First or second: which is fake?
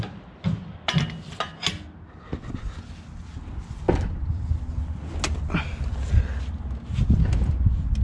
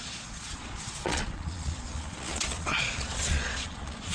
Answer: second